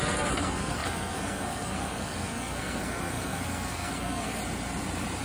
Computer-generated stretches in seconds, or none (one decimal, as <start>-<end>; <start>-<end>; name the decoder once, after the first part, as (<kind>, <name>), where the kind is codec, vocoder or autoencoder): 0.0-4.4 (codec, SNAC)